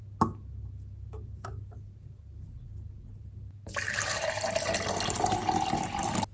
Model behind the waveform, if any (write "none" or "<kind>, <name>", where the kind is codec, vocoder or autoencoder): none